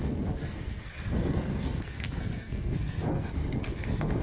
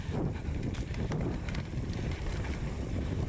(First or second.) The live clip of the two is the second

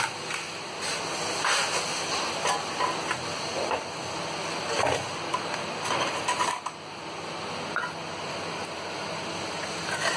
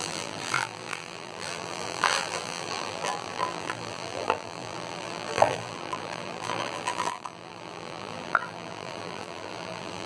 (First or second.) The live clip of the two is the first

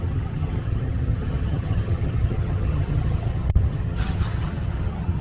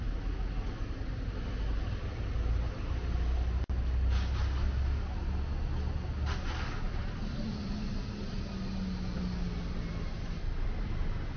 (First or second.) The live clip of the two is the second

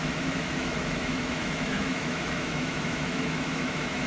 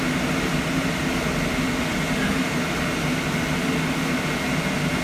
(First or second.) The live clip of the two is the second